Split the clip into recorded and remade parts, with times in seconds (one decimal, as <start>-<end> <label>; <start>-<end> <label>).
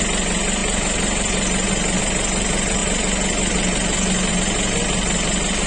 0.0-5.7 recorded